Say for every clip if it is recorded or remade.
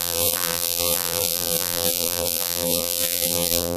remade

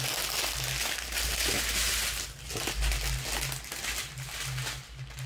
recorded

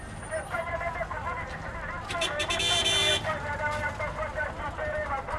recorded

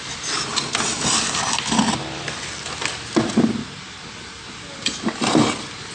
recorded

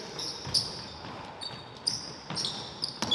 recorded